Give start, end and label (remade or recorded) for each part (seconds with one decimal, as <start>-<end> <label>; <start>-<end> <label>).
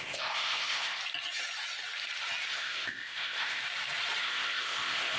0.0-1.0 remade; 1.0-2.5 recorded; 2.5-3.6 remade; 3.6-4.2 recorded; 4.2-5.2 remade